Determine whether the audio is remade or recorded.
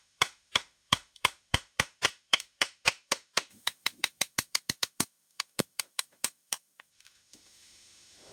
remade